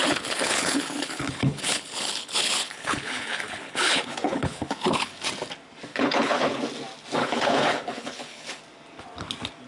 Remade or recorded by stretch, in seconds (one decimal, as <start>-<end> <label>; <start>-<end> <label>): 0.0-5.2 remade; 5.2-5.9 recorded; 5.9-6.6 remade; 6.6-7.2 recorded; 7.2-8.6 remade; 8.6-9.7 recorded